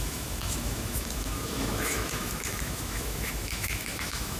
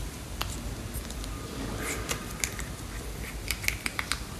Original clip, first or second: second